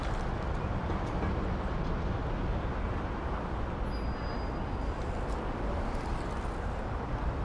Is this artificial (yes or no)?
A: no